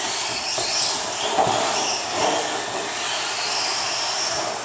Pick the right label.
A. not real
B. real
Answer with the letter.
B